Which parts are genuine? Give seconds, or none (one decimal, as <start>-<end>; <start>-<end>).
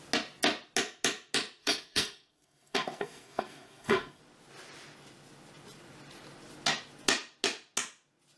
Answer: 0.0-1.6; 4.2-8.4